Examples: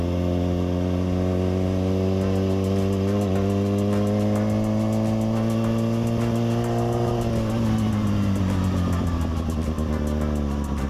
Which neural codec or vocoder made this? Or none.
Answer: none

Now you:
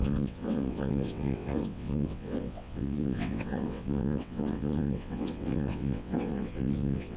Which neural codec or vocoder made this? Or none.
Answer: vocoder, WaveNeXt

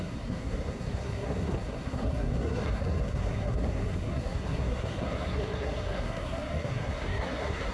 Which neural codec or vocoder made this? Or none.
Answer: codec, SNAC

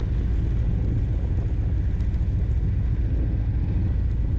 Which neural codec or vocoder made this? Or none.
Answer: none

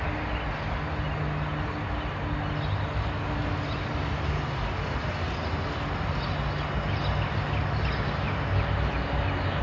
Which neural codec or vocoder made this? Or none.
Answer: none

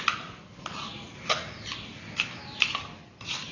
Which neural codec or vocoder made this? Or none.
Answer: none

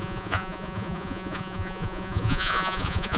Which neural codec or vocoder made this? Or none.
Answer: vocoder, Vocos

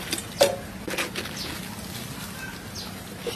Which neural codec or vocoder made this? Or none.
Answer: none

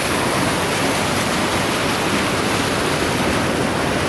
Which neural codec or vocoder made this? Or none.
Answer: none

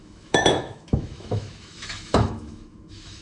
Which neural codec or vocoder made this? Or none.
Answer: autoencoder, DAC-VAE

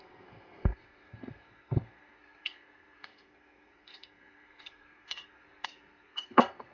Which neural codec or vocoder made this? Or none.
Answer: codec, SNAC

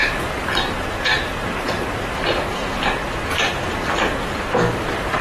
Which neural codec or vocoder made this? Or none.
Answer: vocoder, BigVGAN v2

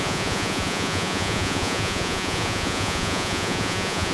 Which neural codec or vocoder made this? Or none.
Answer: vocoder, Vocos